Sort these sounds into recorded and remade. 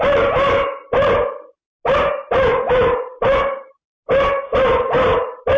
recorded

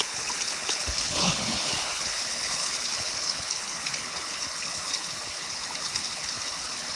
remade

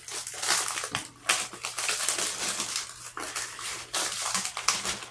recorded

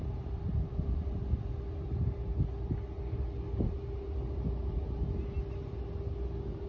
recorded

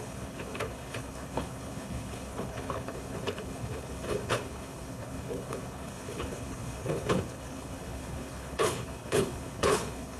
remade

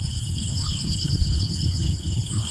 remade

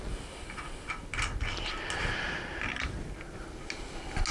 recorded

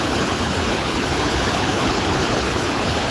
remade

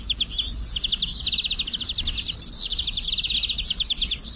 recorded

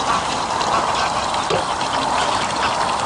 recorded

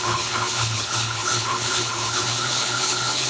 remade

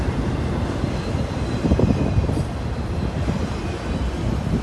recorded